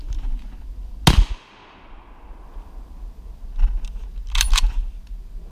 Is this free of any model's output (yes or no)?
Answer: yes